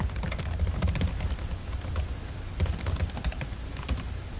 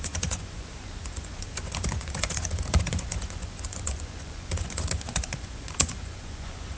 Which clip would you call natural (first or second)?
first